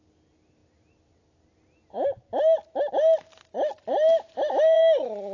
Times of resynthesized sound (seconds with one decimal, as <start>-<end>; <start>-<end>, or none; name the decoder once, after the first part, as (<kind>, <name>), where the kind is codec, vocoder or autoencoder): 3.7-4.8 (vocoder, BigVGAN v2)